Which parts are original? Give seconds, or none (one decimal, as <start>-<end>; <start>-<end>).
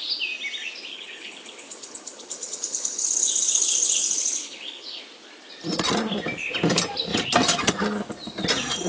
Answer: 0.0-0.9; 5.0-8.9